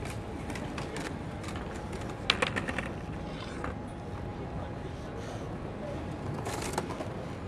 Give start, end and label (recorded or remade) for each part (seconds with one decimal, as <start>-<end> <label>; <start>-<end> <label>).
0.0-7.5 recorded